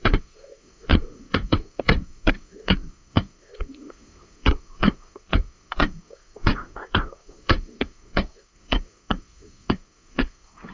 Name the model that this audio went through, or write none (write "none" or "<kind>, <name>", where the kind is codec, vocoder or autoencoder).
codec, SNAC